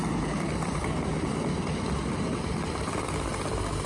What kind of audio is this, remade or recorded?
recorded